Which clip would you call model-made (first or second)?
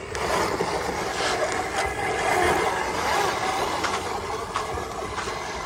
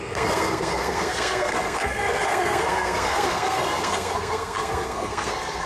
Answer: second